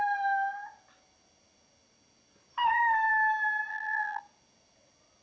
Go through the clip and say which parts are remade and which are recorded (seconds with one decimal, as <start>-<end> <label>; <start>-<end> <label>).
0.0-3.7 recorded; 3.7-4.2 remade; 4.2-5.2 recorded